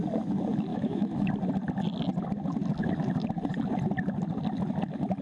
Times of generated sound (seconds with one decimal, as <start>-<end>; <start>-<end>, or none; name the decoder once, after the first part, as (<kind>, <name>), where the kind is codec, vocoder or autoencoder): 0.7-1.3 (autoencoder, DAC-VAE)